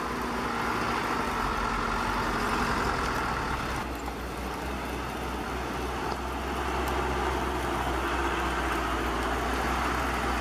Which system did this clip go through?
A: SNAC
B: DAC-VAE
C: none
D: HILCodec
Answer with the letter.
C